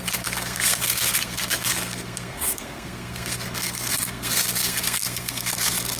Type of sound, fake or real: fake